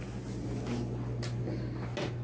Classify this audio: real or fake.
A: real